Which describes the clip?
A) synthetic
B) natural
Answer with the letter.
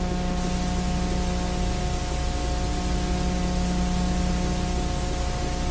B